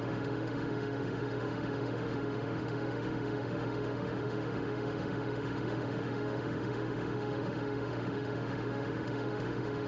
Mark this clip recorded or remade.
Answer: remade